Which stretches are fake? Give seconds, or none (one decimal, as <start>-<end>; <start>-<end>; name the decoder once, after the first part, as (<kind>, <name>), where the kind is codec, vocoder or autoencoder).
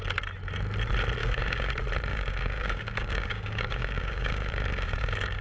1.2-1.7 (codec, DAC); 2.1-5.4